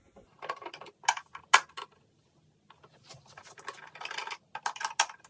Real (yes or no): yes